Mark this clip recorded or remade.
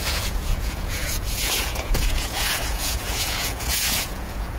remade